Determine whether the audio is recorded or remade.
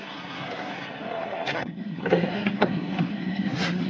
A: remade